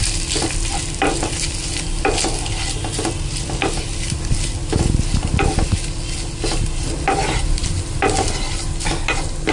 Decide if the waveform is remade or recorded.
recorded